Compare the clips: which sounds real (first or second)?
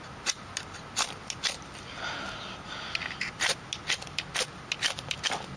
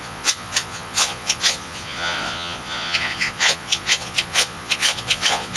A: first